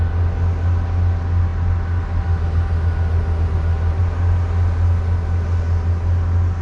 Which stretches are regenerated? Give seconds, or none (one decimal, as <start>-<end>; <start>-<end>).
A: none